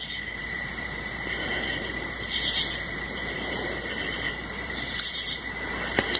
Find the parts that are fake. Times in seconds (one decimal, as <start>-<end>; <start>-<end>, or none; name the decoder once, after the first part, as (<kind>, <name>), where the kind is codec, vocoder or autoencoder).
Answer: 0.4-1.1 (vocoder, BigVGAN v2); 1.7-5.4